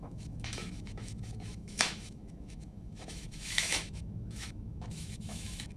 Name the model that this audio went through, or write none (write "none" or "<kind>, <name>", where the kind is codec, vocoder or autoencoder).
autoencoder, DAC-VAE